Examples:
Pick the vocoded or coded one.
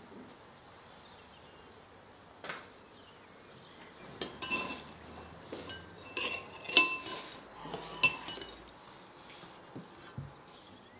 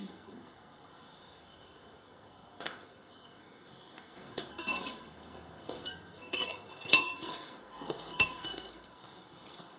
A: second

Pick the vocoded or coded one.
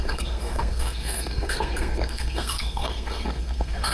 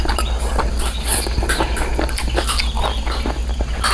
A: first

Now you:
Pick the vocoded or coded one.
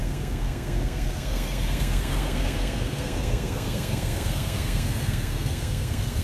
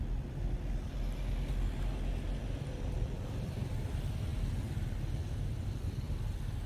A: first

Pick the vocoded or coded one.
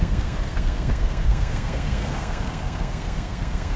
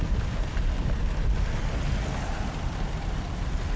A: first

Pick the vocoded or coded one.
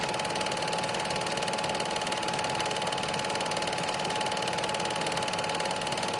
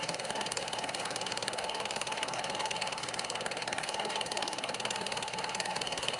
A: second